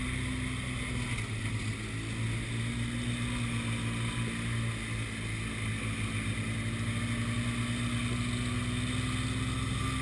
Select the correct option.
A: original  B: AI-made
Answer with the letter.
A